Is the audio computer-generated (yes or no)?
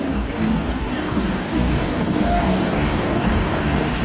yes